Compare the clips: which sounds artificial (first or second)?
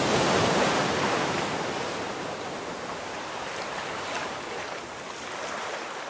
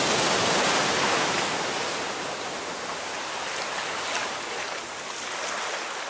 first